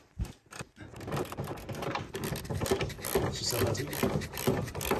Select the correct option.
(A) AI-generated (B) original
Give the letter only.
B